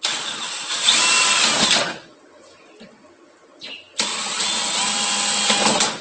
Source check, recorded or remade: recorded